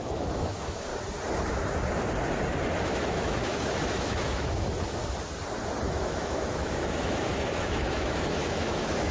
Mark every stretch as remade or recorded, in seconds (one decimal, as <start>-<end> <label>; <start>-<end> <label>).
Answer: 0.0-0.9 remade; 0.9-2.8 recorded; 2.8-5.0 remade; 5.0-5.9 recorded; 5.9-9.1 remade